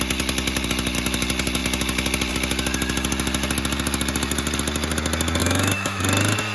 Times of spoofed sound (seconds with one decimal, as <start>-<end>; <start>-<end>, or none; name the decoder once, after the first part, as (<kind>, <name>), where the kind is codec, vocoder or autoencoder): 5.4-6.0 (autoencoder, DAC-VAE)